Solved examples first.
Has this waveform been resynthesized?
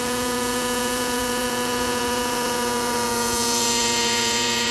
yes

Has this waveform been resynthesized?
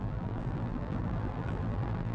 yes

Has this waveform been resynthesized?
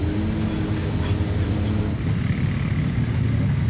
no